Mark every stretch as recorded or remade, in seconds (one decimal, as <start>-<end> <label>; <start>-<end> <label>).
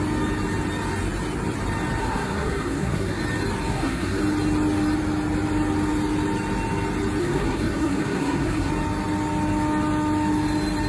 0.0-2.0 recorded; 2.0-3.2 remade; 3.2-3.7 recorded; 3.7-4.2 remade; 4.2-7.2 recorded; 7.2-8.7 remade; 8.7-10.9 recorded